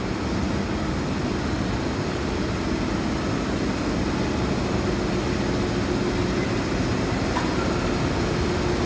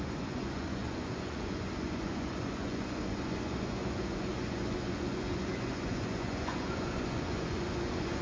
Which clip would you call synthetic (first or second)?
second